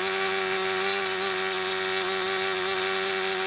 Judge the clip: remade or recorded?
recorded